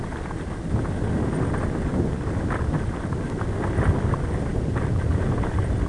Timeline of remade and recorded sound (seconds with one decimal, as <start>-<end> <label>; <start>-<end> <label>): 0.0-4.5 recorded; 4.5-5.5 remade; 5.5-5.9 recorded